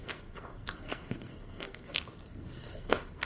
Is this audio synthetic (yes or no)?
yes